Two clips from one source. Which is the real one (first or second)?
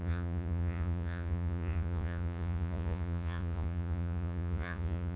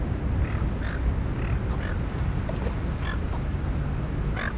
second